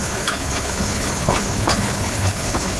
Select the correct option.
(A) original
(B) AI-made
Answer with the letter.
B